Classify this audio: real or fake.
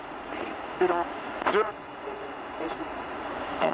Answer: fake